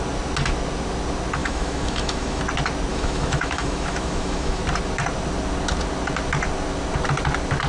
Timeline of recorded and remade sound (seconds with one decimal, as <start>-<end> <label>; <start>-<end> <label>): 0.0-1.4 recorded; 1.4-2.4 remade; 2.4-2.9 recorded; 2.9-4.6 remade; 4.6-7.7 recorded